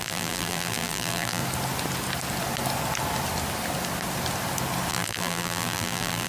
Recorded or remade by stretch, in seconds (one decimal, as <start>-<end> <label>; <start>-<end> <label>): 0.0-1.4 remade; 1.4-4.9 recorded; 4.9-6.3 remade